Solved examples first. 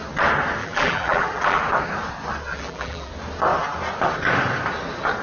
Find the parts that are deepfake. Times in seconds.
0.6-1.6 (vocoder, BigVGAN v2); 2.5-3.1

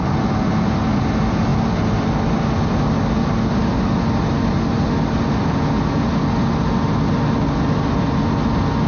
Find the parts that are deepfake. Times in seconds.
none

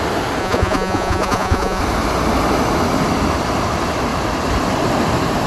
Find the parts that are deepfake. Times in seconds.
0.4-1.8 (vocoder, Vocos)

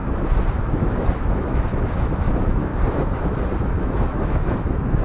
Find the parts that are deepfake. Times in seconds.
0.6-2.7 (autoencoder, DAC-VAE); 3.7-5.0

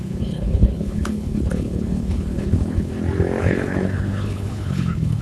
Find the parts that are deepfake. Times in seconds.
0.0-2.9 (codec, HILCodec); 3.4-5.2

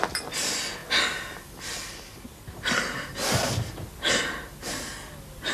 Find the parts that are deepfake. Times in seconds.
none

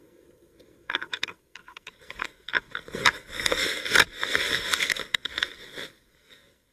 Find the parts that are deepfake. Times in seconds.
0.0-6.7 (codec, SNAC)

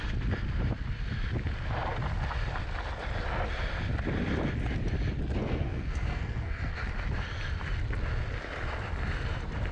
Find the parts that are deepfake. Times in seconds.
5.4-6.8 (codec, SNAC)